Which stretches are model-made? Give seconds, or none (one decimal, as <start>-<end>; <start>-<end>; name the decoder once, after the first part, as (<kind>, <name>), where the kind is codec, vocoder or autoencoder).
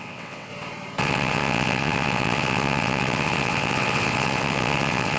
0.0-0.5 (vocoder, WaveNeXt); 1.0-5.2